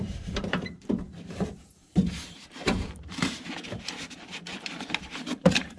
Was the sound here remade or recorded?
remade